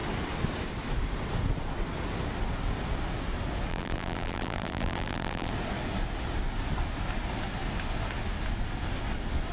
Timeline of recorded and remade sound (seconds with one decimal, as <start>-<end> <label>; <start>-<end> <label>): 0.0-3.7 recorded; 3.7-5.5 remade; 5.5-9.5 recorded